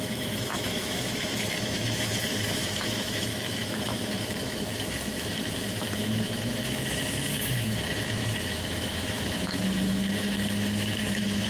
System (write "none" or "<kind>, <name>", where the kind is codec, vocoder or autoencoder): autoencoder, DAC-VAE